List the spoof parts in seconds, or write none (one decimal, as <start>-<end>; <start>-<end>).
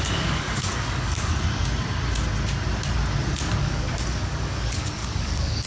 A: 0.0-1.3; 3.6-5.7